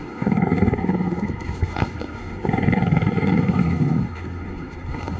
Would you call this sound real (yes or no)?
no